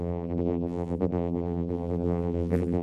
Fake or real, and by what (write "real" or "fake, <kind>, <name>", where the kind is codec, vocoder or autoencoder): fake, vocoder, BigVGAN v2